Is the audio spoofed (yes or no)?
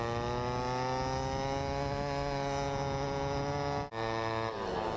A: no